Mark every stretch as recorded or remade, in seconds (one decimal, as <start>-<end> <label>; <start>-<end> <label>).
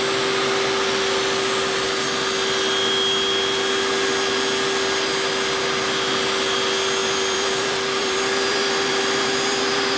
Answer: 0.0-7.0 recorded; 7.0-10.0 remade